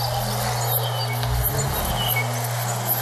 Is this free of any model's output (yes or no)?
yes